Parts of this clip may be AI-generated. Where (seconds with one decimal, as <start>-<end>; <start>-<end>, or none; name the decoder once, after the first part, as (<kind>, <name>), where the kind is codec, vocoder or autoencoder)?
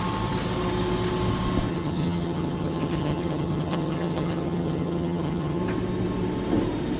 1.7-5.6 (vocoder, HiFi-GAN)